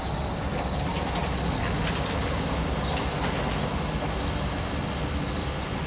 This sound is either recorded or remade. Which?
recorded